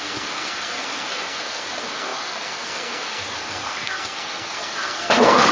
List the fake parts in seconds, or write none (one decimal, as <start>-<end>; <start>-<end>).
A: 0.0-5.5